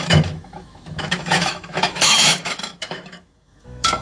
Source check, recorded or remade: remade